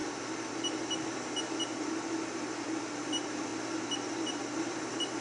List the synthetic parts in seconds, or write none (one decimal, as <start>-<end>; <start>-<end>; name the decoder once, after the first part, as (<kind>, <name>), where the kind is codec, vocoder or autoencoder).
3.1-3.5 (vocoder, BigVGAN v2); 4.1-5.2